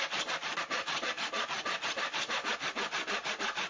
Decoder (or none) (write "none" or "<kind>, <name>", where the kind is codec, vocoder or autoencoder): none